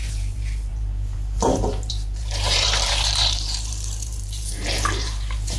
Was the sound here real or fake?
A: fake